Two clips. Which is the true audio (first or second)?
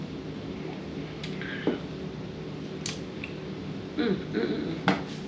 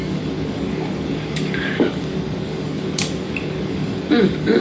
first